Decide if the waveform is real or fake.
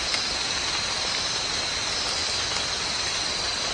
real